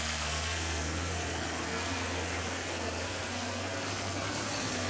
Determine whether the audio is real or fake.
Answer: fake